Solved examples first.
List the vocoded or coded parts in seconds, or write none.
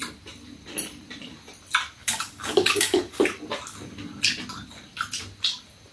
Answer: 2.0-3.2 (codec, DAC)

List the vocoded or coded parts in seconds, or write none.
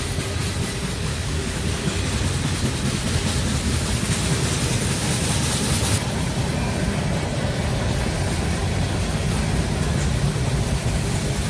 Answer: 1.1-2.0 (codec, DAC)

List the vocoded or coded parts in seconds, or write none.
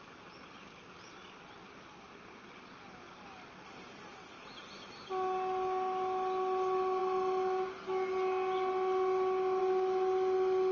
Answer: none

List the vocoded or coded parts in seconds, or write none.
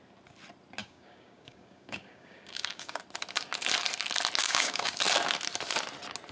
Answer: 0.8-3.0 (codec, DAC); 4.4-5.0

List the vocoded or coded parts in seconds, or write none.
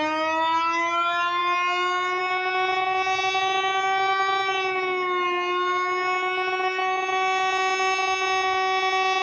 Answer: none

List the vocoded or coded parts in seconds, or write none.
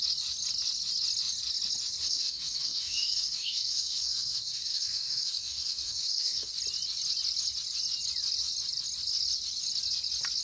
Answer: 2.0-6.5 (codec, DAC)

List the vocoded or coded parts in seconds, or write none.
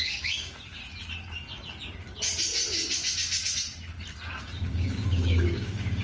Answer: 0.0-0.8 (codec, DAC); 4.4-6.0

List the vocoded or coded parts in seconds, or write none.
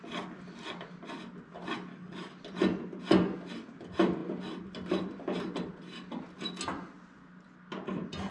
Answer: 1.9-2.4 (codec, DAC)